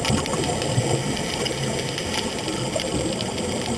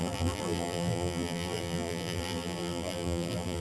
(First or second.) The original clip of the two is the first